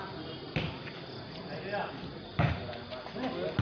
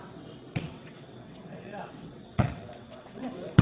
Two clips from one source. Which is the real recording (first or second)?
first